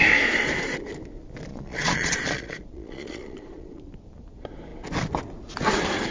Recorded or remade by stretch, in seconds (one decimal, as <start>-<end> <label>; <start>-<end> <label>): 0.0-1.5 recorded; 1.5-3.8 remade; 3.8-6.1 recorded